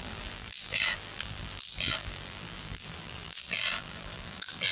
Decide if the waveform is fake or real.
fake